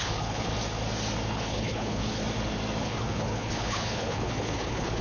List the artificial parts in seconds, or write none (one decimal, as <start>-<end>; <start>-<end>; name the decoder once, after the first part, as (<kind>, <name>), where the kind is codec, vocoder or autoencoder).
0.0-0.5 (codec, HILCodec); 1.3-2.2; 2.8-5.0